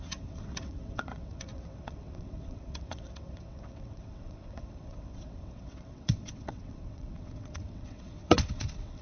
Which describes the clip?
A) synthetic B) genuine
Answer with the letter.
A